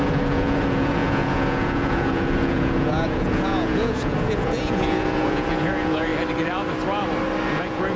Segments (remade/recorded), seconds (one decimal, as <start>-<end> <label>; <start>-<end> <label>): 0.0-6.1 remade; 6.1-7.5 recorded; 7.5-8.0 remade